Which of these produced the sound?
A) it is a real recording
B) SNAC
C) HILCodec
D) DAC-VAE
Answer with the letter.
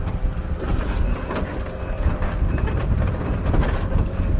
A